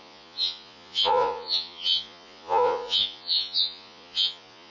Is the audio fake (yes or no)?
yes